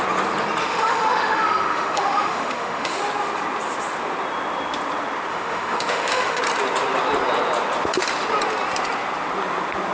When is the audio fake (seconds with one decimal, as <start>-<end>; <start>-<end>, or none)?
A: 0.6-3.0; 5.3-6.4

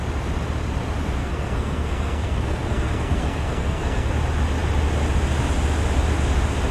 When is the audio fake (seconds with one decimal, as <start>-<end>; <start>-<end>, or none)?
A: 1.2-4.1

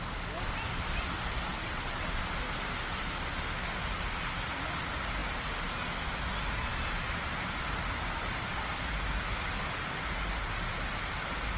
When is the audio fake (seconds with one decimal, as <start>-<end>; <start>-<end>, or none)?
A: 1.6-2.2

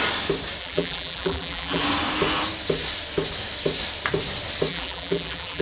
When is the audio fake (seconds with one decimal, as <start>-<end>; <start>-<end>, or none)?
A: 0.6-1.8; 4.7-5.6

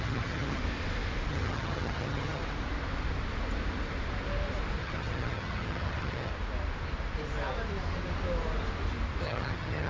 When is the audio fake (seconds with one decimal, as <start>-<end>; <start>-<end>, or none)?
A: 0.0-0.6; 1.3-2.4; 4.8-6.3; 9.2-9.9

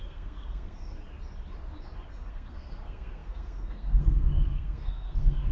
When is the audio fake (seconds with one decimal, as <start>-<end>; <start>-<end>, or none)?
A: 0.0-1.0; 2.3-5.5

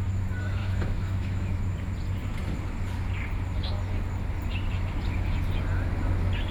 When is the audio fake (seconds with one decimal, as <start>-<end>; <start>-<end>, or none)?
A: 0.6-1.6

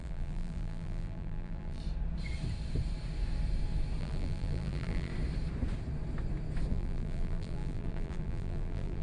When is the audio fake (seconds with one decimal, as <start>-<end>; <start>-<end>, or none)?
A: 0.0-1.8; 4.0-5.1; 6.7-9.0